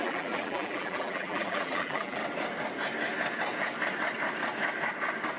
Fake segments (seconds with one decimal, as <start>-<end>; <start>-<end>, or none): 0.0-2.2